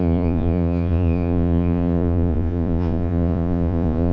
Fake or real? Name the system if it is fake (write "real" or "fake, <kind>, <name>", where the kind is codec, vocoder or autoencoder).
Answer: fake, vocoder, Vocos